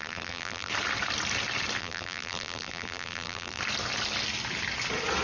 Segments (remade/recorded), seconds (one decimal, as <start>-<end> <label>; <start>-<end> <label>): 0.0-0.7 remade; 0.7-1.8 recorded; 1.8-3.6 remade; 3.6-5.2 recorded